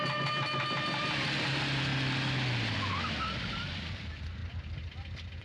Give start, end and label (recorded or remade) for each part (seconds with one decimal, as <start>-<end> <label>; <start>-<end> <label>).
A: 0.0-5.4 recorded